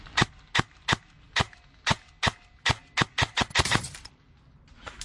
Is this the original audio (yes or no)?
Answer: yes